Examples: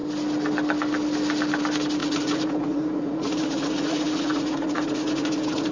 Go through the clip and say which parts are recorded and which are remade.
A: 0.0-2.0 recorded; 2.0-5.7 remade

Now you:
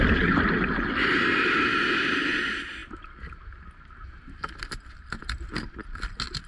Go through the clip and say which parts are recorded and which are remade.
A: 0.0-1.7 recorded; 1.7-2.4 remade; 2.4-4.2 recorded; 4.2-5.2 remade; 5.2-6.5 recorded

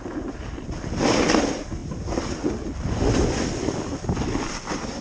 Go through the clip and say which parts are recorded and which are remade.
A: 0.0-5.0 recorded

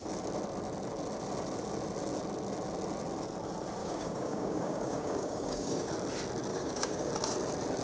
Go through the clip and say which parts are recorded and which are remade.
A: 0.0-3.8 recorded; 3.8-5.9 remade; 5.9-6.5 recorded; 6.5-7.1 remade; 7.1-7.8 recorded

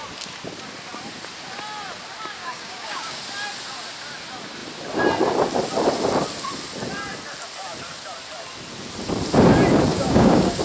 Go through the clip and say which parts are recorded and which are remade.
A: 0.0-2.4 recorded; 2.4-3.2 remade; 3.2-9.9 recorded; 9.9-10.6 remade

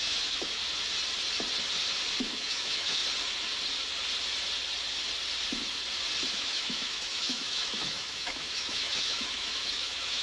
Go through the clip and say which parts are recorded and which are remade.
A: 0.0-0.6 remade; 0.6-2.2 recorded; 2.2-3.0 remade; 3.0-6.3 recorded; 6.3-10.2 remade